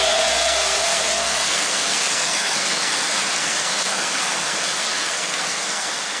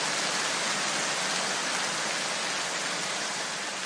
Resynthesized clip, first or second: first